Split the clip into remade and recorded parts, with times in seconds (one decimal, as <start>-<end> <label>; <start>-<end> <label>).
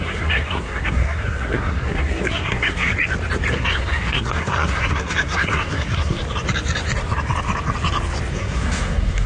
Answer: 0.0-2.9 remade; 2.9-3.5 recorded; 3.5-6.2 remade; 6.2-8.3 recorded; 8.3-9.3 remade